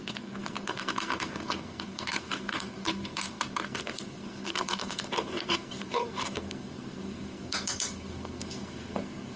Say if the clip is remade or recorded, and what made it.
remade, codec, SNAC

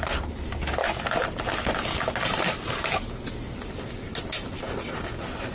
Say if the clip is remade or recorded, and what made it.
recorded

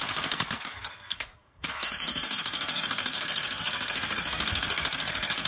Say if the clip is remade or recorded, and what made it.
remade, codec, SNAC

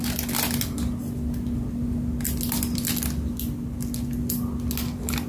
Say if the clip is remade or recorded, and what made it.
recorded